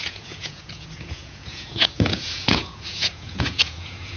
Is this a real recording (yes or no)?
no